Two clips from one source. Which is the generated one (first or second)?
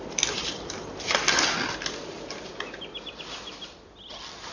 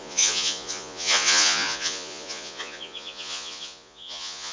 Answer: second